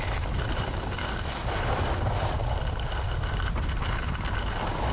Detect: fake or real real